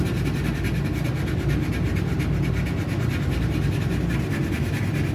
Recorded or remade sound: recorded